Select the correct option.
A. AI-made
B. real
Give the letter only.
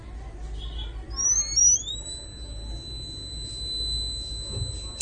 B